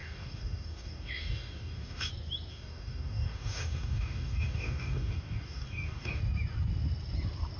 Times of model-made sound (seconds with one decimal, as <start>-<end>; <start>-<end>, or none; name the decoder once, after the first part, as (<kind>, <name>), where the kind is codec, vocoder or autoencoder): 0.0-2.1 (codec, DAC); 2.5-6.2